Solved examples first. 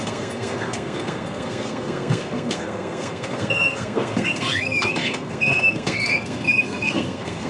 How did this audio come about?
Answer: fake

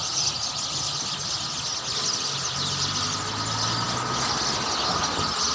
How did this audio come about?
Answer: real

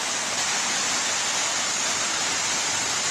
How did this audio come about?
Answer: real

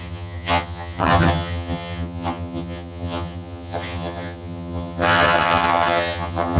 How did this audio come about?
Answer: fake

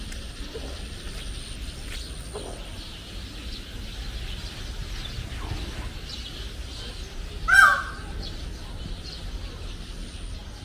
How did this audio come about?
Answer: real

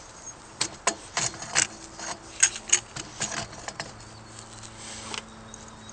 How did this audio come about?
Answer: real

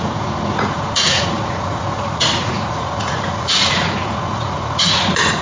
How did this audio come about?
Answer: fake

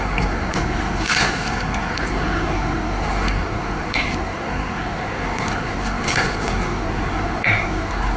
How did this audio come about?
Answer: fake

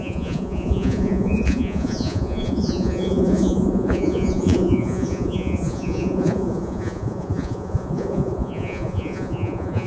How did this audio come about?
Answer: fake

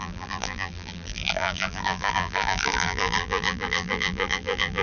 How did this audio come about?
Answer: fake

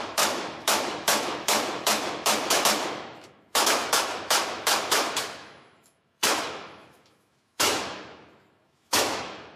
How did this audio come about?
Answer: fake